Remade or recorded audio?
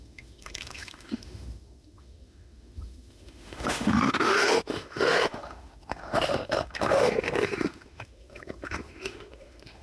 remade